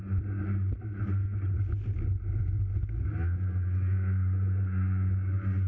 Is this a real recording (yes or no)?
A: yes